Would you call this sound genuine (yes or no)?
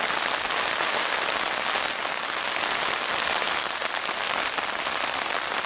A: yes